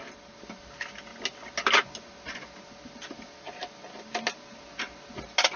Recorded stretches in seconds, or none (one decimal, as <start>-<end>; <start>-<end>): 0.0-5.6